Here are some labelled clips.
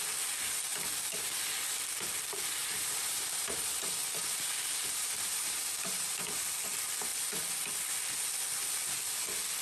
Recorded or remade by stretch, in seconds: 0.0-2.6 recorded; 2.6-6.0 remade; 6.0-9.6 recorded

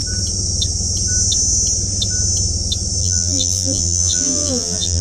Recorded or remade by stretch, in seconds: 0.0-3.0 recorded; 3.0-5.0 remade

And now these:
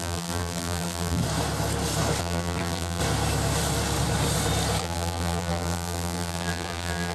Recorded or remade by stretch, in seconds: 0.0-1.2 remade; 1.2-2.2 recorded; 2.2-3.0 remade; 3.0-4.8 recorded; 4.8-7.1 remade

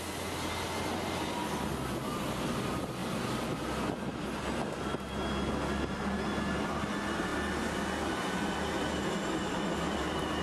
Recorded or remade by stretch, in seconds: 0.0-3.0 recorded; 3.0-4.3 remade; 4.3-10.4 recorded

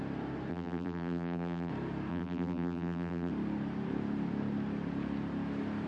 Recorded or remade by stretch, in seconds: 0.0-0.5 recorded; 0.5-1.7 remade; 1.7-2.1 recorded; 2.1-3.3 remade; 3.3-5.9 recorded